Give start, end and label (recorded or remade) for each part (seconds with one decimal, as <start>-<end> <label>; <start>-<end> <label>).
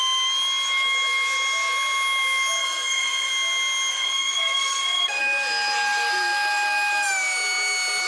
0.0-2.6 recorded; 2.6-3.3 remade; 3.3-3.9 recorded; 3.9-5.2 remade; 5.2-8.1 recorded